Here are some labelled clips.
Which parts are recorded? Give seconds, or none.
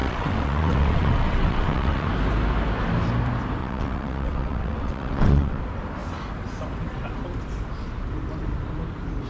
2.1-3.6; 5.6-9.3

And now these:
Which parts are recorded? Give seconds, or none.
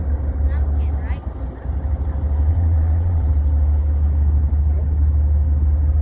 0.0-2.5; 3.3-6.0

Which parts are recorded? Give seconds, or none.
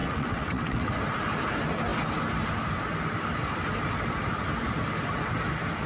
0.9-5.9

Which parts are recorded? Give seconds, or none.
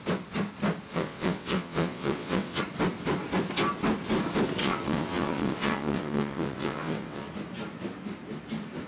0.0-0.9; 2.6-4.6; 7.3-8.9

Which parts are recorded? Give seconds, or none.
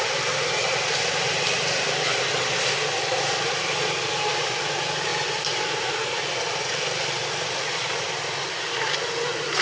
0.0-9.6